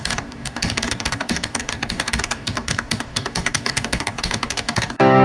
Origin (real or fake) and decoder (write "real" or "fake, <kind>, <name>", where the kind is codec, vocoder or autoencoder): fake, codec, DAC